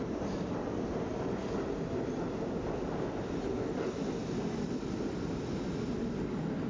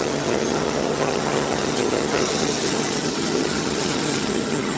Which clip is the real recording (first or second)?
first